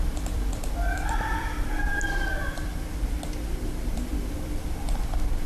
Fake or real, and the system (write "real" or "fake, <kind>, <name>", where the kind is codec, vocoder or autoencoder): fake, vocoder, BigVGAN v2